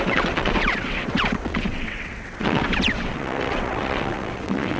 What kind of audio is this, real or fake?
fake